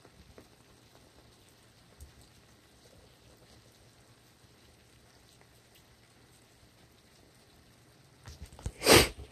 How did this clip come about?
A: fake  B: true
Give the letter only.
B